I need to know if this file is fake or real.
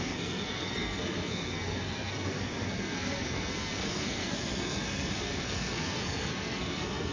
fake